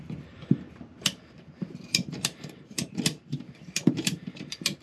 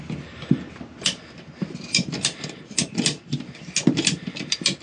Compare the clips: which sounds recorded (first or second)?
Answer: second